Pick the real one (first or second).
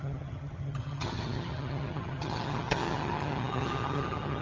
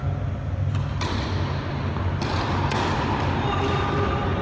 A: second